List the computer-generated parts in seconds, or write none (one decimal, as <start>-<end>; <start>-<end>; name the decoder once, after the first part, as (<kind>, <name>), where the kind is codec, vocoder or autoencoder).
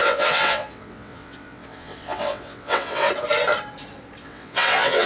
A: 0.0-3.1 (vocoder, WaveNeXt); 4.2-5.1